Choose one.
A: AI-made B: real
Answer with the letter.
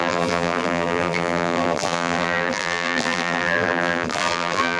A